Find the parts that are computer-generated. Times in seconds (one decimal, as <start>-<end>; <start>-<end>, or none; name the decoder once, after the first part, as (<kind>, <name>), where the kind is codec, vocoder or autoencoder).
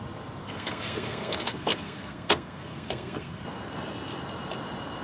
0.4-3.4 (codec, SNAC)